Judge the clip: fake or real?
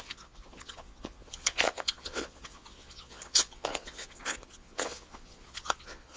fake